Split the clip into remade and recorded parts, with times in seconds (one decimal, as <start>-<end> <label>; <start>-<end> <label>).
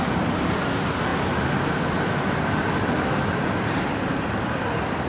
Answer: 0.0-5.1 recorded